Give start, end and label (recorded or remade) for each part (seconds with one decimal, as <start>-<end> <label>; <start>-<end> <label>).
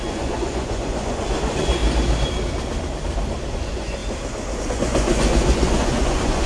0.0-1.8 remade; 1.8-3.5 recorded; 3.5-4.0 remade; 4.0-4.6 recorded; 4.6-6.5 remade